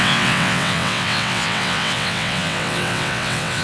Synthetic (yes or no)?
yes